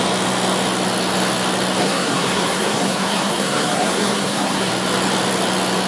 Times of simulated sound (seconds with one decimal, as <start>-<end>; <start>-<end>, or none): 1.8-4.7